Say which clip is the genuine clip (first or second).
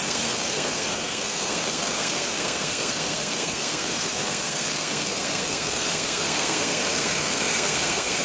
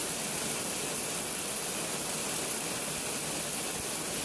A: second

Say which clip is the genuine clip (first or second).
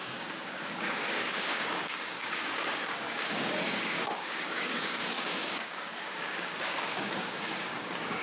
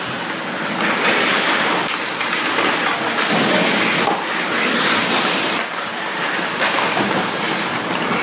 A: second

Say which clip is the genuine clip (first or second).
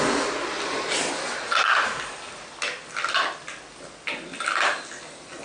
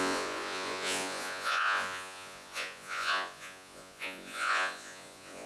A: first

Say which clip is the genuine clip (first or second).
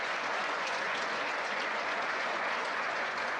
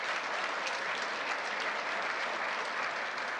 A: second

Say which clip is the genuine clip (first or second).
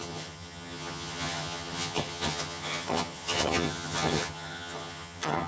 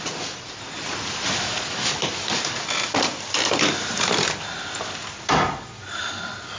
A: second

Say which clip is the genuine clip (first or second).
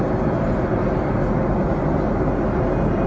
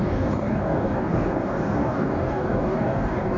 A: first